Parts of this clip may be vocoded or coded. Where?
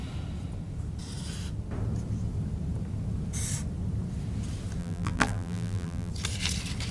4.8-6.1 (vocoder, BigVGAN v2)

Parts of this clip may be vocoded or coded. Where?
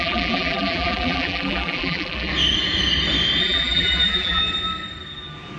0.0-2.3 (vocoder, BigVGAN v2); 3.4-4.4